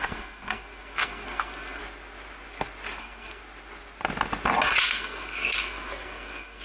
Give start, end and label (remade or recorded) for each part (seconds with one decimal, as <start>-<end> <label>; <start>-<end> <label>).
0.0-1.8 remade; 1.8-3.0 recorded; 3.0-3.4 remade; 3.4-4.8 recorded; 4.8-6.6 remade